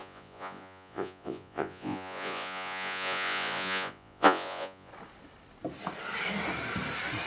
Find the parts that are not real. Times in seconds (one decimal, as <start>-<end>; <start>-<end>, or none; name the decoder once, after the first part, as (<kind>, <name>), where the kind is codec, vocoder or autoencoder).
0.0-4.9 (vocoder, Vocos)